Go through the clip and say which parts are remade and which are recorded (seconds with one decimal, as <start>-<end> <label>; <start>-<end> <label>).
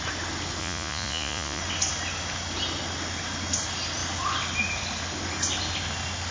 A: 0.0-0.6 recorded; 0.6-1.6 remade; 1.6-6.3 recorded